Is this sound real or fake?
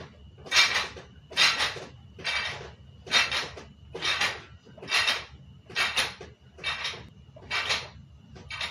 real